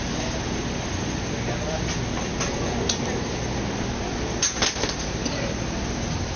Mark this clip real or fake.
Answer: real